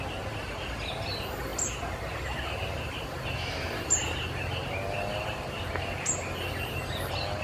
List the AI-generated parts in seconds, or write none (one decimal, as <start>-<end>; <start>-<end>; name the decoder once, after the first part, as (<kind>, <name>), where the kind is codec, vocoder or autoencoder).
none